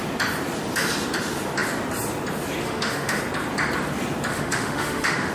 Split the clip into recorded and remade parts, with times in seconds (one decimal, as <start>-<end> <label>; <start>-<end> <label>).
0.0-2.6 recorded; 2.6-3.2 remade; 3.2-4.3 recorded; 4.3-5.3 remade